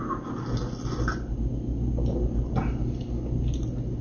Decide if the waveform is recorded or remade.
recorded